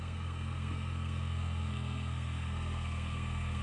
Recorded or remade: remade